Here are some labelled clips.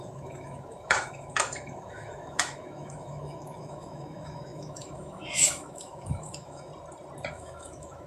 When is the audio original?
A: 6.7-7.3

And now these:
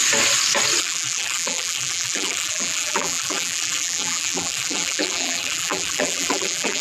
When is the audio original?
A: 0.0-0.8

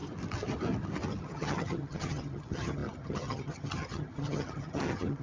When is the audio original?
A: 0.0-1.2

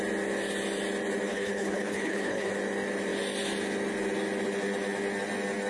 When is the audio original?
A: 0.0-1.3; 2.5-5.7

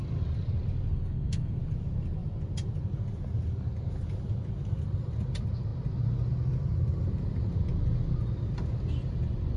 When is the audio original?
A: 0.0-0.9; 1.6-9.6

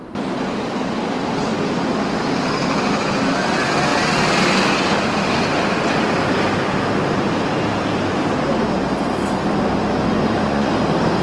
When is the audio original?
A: 0.0-10.1; 10.7-11.2